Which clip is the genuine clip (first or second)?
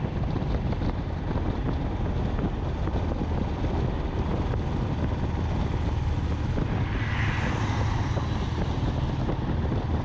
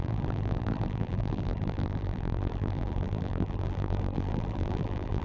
first